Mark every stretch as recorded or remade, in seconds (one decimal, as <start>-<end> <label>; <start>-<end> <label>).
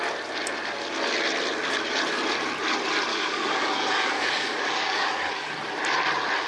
0.0-3.1 recorded; 3.1-5.5 remade; 5.5-6.5 recorded